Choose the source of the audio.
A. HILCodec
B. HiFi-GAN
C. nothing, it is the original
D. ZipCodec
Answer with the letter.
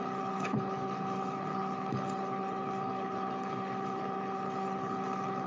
A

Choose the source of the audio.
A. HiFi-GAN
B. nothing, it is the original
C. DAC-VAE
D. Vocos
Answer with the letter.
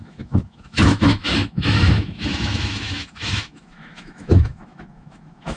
C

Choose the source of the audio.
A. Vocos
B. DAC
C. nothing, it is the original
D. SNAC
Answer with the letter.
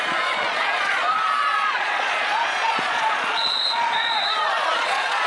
A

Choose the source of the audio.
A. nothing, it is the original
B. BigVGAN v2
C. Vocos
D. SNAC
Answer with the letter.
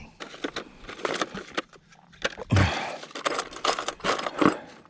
A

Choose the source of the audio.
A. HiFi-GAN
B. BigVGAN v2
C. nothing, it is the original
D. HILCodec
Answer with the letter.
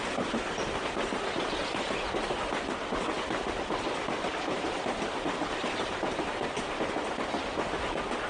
C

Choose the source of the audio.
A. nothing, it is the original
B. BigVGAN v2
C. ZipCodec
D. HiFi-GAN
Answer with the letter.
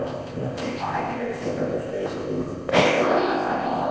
C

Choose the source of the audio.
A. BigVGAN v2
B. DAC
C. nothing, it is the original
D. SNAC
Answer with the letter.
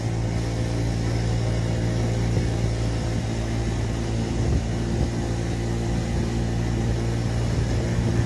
C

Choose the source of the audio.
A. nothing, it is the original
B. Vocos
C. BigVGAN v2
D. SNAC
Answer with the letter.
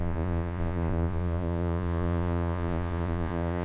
B